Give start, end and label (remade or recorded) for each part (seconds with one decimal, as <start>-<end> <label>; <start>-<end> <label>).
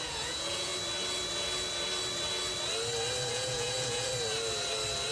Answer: 0.0-0.7 remade; 0.7-3.3 recorded; 3.3-4.1 remade; 4.1-5.1 recorded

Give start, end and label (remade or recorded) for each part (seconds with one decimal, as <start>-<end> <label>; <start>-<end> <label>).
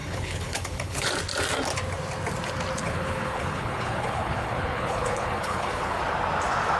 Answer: 0.0-1.1 remade; 1.1-2.8 recorded; 2.8-6.0 remade; 6.0-6.8 recorded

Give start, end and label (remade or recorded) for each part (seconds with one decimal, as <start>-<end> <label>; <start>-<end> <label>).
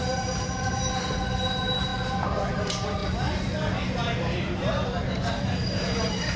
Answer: 0.0-1.9 remade; 1.9-2.5 recorded; 2.5-3.0 remade; 3.0-5.4 recorded; 5.4-6.4 remade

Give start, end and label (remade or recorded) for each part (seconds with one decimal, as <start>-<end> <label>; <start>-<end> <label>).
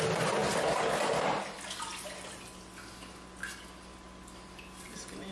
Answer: 0.0-5.3 recorded